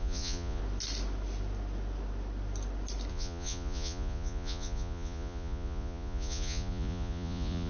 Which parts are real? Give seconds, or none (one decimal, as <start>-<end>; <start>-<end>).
0.6-3.1